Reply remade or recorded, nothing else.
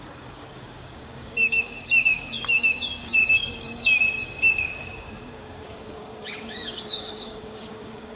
remade